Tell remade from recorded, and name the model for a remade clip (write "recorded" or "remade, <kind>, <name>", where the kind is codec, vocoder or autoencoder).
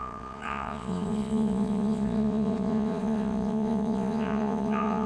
remade, vocoder, Vocos